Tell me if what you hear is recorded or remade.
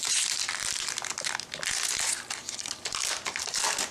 recorded